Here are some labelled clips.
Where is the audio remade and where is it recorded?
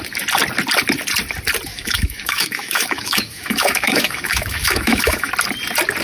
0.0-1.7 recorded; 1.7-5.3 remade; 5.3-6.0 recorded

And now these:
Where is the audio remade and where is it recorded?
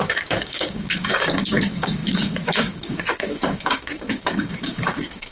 0.0-5.3 remade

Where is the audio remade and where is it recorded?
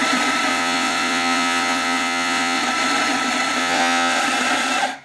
0.0-0.5 recorded; 0.5-2.6 remade; 2.6-3.6 recorded; 3.6-4.2 remade; 4.2-5.0 recorded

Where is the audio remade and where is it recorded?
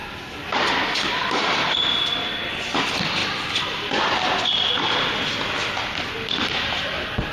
0.0-7.3 recorded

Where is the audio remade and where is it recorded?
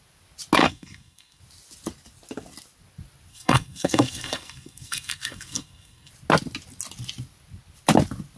0.0-0.6 recorded; 0.6-1.4 remade; 1.4-3.3 recorded; 3.3-6.1 remade; 6.1-8.4 recorded